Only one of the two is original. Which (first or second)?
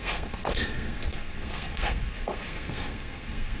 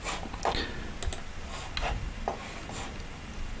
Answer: second